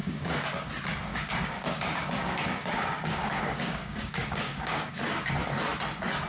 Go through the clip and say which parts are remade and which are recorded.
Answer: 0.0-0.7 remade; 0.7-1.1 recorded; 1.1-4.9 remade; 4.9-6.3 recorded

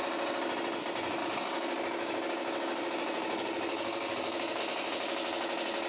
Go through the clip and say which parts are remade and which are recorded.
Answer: 0.0-1.2 recorded; 1.2-4.6 remade; 4.6-5.9 recorded

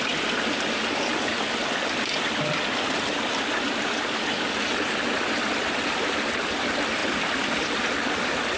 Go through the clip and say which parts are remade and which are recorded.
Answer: 0.0-8.6 recorded

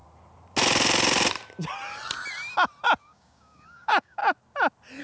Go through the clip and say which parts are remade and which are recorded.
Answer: 0.0-3.0 recorded; 3.0-4.2 remade; 4.2-5.0 recorded